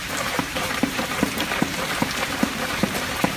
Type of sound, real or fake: fake